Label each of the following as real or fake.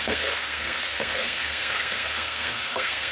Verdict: fake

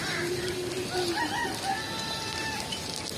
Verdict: real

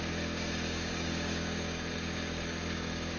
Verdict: fake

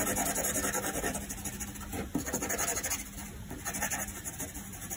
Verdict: real